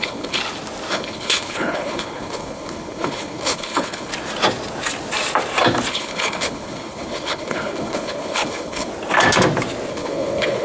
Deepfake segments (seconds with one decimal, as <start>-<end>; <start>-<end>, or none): 0.0-0.4; 0.9-4.1; 5.9-8.9; 9.9-10.6